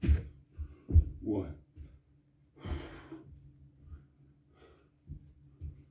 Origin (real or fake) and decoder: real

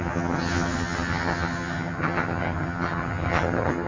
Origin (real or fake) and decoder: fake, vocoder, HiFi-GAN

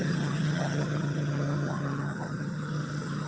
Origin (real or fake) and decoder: fake, vocoder, HiFi-GAN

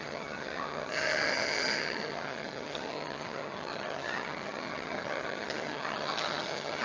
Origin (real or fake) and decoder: fake, vocoder, HiFi-GAN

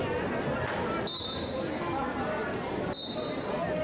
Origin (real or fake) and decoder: real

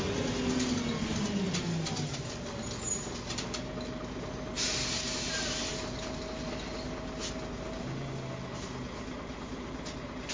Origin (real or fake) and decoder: real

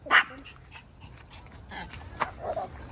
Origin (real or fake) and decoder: real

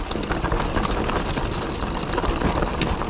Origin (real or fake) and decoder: real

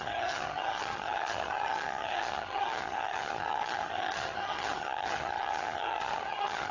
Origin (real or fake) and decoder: fake, vocoder, HiFi-GAN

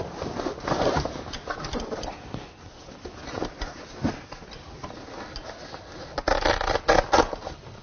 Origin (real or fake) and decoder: real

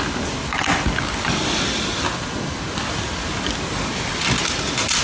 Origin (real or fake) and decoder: real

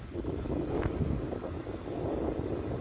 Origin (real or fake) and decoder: real